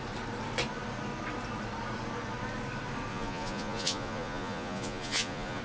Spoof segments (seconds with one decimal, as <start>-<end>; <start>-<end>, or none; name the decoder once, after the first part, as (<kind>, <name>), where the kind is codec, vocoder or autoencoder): 3.1-5.6 (vocoder, Vocos)